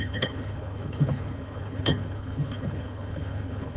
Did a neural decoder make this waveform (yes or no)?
yes